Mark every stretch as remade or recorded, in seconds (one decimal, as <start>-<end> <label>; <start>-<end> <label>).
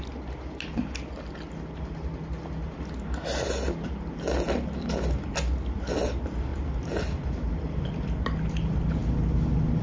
0.0-9.8 recorded